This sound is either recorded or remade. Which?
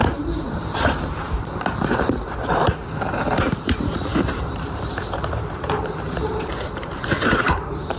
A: remade